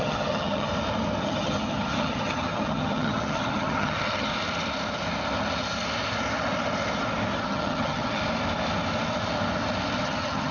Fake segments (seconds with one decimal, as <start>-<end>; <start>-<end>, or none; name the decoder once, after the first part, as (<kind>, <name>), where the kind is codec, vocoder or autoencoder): 0.0-0.7 (vocoder, HiFi-GAN); 1.2-4.3; 7.4-8.2; 10.0-10.5